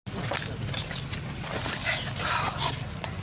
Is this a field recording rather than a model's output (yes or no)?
yes